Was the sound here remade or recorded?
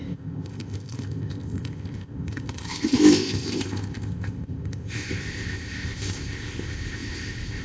remade